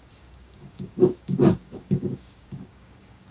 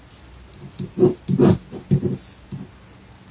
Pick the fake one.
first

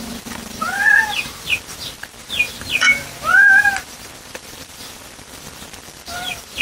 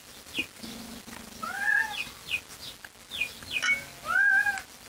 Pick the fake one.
first